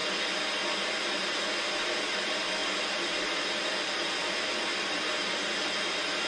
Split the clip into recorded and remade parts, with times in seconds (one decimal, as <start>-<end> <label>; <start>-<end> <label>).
0.0-1.6 recorded; 1.6-5.4 remade; 5.4-6.3 recorded